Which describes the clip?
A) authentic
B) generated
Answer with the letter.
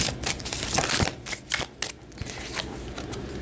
A